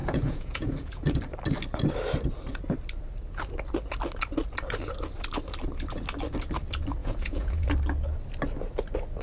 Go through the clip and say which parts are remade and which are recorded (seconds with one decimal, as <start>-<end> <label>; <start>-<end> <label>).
0.0-1.2 remade; 1.2-7.0 recorded; 7.0-7.7 remade; 7.7-9.2 recorded